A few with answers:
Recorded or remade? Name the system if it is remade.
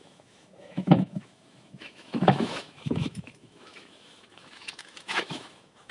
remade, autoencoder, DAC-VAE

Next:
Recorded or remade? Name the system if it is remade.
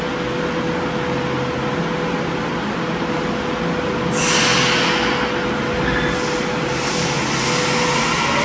recorded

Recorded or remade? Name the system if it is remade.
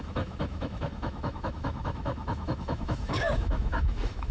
remade, autoencoder, DAC-VAE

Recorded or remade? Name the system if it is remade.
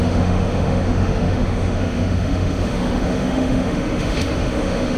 remade, autoencoder, DAC-VAE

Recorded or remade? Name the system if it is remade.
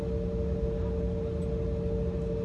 recorded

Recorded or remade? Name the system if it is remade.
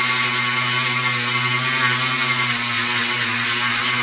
recorded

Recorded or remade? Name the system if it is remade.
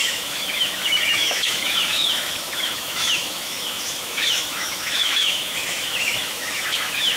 remade, autoencoder, DAC-VAE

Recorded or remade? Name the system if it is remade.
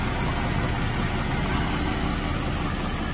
recorded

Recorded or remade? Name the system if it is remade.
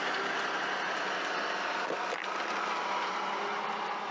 recorded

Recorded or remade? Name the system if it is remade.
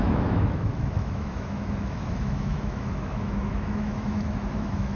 remade, autoencoder, DAC-VAE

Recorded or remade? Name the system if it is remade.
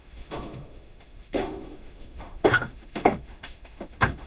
remade, autoencoder, DAC-VAE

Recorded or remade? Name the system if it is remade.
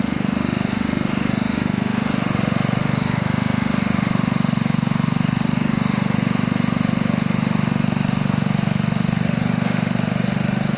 remade, autoencoder, DAC-VAE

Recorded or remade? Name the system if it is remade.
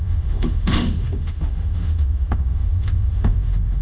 remade, autoencoder, DAC-VAE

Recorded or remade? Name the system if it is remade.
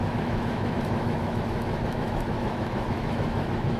remade, autoencoder, DAC-VAE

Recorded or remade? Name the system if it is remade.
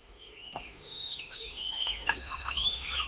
remade, autoencoder, DAC-VAE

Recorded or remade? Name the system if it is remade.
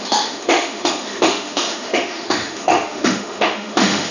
remade, autoencoder, DAC-VAE